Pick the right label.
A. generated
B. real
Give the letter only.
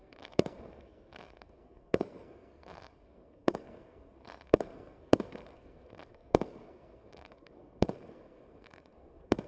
A